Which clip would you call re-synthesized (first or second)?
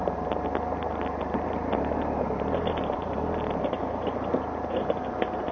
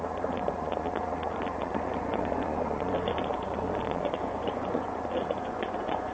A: second